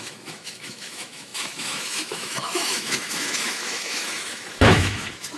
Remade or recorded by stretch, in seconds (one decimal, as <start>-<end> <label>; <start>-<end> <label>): 0.0-5.4 remade